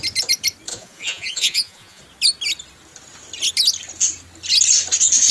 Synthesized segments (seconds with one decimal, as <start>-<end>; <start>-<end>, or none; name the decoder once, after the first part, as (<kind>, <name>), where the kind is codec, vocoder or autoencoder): 0.7-2.0 (vocoder, Vocos)